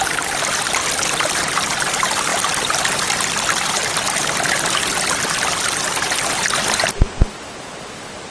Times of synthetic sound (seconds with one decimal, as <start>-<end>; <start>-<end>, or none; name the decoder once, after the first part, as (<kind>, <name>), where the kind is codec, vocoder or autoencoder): none